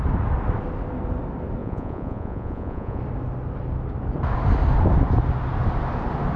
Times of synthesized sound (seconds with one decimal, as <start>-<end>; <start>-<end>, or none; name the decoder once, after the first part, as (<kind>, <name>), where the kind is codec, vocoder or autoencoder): 1.6-3.0 (vocoder, Vocos)

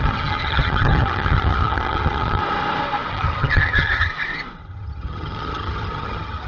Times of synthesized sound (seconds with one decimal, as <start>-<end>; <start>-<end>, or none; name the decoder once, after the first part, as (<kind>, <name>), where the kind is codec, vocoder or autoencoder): 0.0-2.4 (vocoder, HiFi-GAN); 3.1-4.1; 4.6-6.5

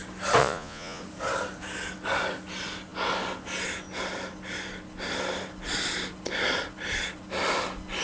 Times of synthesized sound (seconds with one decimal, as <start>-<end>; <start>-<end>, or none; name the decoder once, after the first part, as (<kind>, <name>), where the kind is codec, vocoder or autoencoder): 0.4-1.0 (vocoder, Vocos)

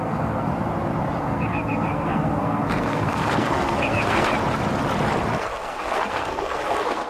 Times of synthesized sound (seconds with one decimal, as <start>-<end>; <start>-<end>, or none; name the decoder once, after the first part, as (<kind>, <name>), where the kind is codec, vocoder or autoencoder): 0.0-0.5 (codec, SNAC); 1.2-4.3; 5.4-7.1

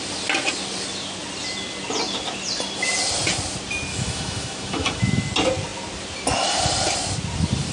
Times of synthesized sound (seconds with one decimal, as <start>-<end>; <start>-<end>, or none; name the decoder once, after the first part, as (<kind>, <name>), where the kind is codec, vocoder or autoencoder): 3.9-5.3 (autoencoder, DAC-VAE)

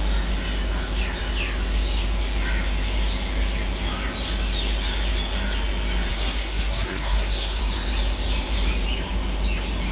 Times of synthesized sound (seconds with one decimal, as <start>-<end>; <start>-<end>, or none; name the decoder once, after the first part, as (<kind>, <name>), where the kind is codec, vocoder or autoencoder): 6.1-7.6 (codec, SNAC)

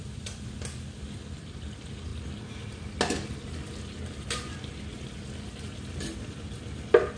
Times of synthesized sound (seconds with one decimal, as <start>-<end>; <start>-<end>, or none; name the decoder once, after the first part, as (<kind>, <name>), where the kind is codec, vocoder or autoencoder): none

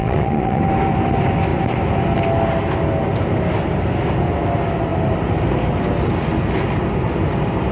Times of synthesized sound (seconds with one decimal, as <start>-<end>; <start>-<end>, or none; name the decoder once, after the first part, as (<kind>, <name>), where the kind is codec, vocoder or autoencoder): 0.0-0.6 (vocoder, WaveNeXt)